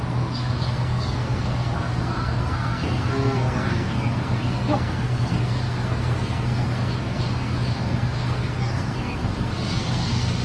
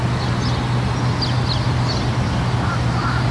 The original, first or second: second